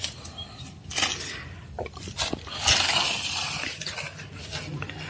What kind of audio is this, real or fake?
real